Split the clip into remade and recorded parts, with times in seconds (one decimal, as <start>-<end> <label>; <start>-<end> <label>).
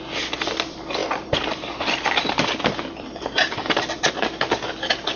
0.0-1.0 recorded; 1.0-4.0 remade; 4.0-5.2 recorded